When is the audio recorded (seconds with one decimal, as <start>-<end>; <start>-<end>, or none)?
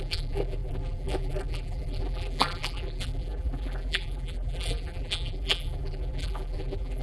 none